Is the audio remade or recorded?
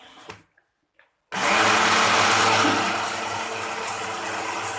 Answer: recorded